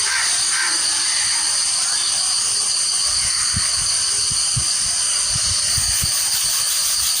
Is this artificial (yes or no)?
no